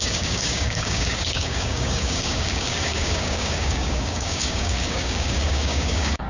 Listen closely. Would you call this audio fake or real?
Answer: fake